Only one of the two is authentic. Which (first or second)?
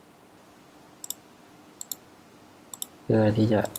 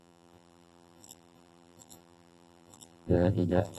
first